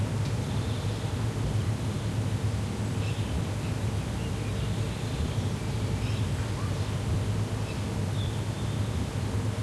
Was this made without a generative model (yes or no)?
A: yes